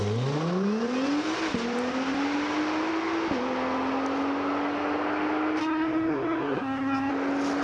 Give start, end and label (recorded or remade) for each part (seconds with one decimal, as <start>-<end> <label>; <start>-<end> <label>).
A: 0.0-5.6 recorded; 5.6-7.1 remade; 7.1-7.6 recorded